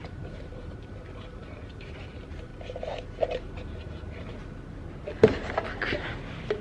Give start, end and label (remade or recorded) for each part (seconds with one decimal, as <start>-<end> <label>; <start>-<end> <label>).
0.0-2.5 remade; 2.5-6.6 recorded